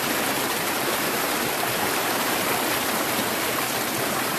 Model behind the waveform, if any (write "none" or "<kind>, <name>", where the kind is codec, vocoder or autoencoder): vocoder, BigVGAN v2